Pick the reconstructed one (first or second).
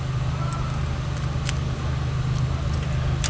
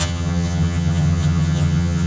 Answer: second